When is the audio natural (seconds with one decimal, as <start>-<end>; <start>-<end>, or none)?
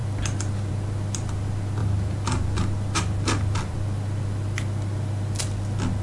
0.0-6.0